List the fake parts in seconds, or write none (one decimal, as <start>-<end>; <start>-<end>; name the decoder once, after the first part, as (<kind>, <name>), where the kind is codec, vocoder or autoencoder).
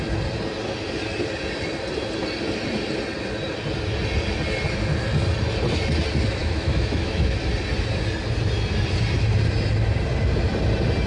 6.4-7.4 (autoencoder, DAC-VAE)